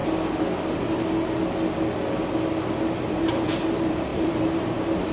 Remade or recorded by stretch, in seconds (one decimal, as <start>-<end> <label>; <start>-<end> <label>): 0.0-3.1 recorded; 3.1-5.1 remade